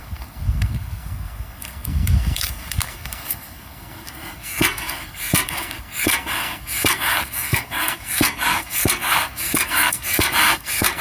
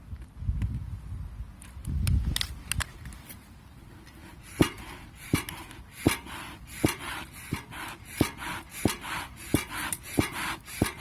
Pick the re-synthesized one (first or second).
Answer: first